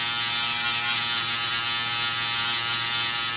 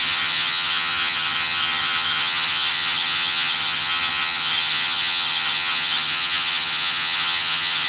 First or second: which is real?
first